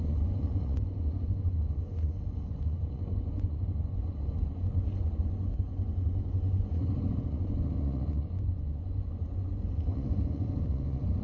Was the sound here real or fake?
fake